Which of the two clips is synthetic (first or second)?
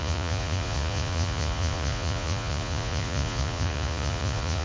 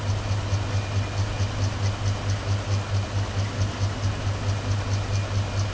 first